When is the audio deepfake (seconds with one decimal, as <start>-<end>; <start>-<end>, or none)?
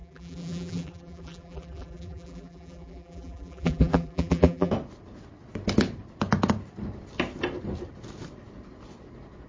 0.0-4.7